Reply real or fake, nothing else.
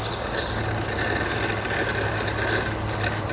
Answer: real